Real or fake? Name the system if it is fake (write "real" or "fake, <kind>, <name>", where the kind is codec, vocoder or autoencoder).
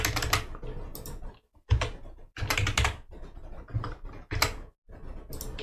real